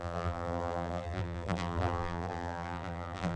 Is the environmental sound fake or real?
fake